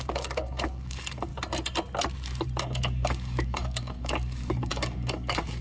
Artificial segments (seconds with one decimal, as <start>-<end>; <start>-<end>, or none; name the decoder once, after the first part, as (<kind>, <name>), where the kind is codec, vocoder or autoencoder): 0.0-1.3 (codec, DAC); 2.6-5.6